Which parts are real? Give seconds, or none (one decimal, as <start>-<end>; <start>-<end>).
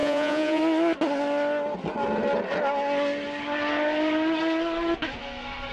0.6-5.7